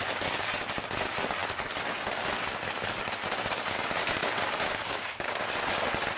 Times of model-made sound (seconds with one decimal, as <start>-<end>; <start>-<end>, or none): 4.0-5.4

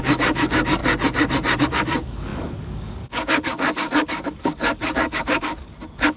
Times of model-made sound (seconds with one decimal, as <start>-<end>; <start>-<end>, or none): 0.0-0.8; 1.6-6.2

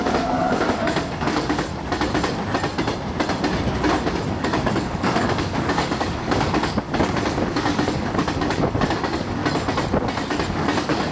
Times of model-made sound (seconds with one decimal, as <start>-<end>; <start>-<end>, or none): 0.0-1.7; 4.3-9.4; 10.5-11.1

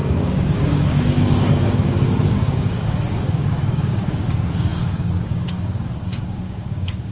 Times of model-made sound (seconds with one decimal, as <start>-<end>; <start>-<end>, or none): 0.0-7.1